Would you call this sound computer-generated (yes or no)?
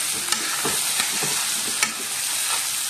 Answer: no